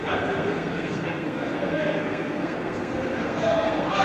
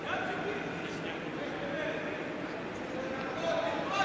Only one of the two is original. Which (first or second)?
second